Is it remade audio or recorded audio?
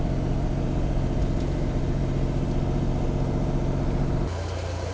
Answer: recorded